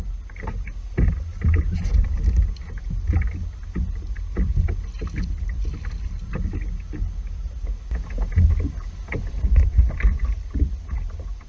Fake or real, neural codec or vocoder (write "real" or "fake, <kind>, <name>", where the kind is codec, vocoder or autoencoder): real